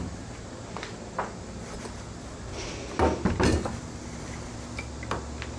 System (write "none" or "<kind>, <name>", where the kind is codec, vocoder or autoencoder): none